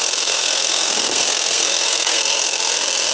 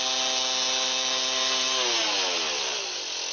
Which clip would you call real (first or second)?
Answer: second